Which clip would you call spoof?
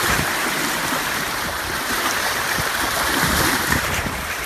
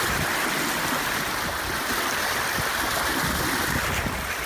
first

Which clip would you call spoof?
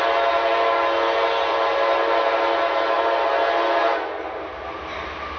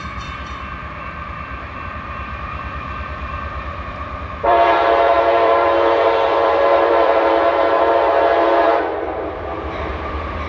second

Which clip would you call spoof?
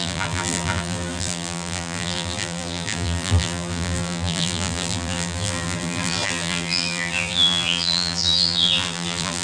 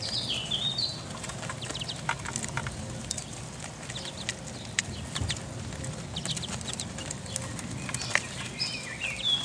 first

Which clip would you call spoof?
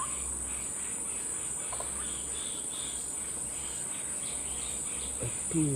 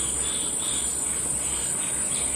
second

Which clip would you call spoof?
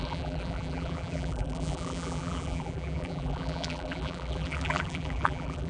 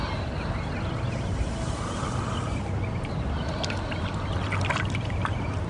first